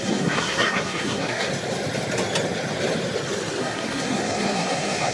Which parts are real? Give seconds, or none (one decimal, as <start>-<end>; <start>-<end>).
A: 1.5-3.6